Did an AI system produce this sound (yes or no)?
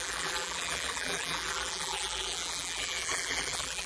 yes